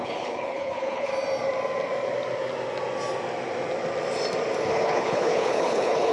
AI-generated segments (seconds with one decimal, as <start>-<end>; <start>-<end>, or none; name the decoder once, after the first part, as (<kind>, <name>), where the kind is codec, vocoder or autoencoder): 0.0-1.1 (codec, HILCodec); 4.7-6.1